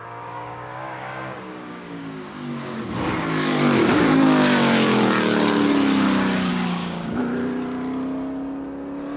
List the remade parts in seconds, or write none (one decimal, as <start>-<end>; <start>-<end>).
0.0-2.8; 3.8-5.0; 6.5-7.2